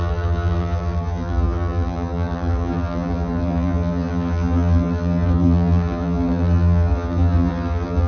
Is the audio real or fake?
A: fake